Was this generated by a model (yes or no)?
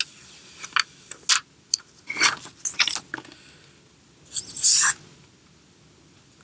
no